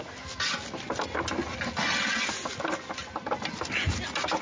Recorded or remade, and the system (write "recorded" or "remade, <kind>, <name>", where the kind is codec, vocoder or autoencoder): recorded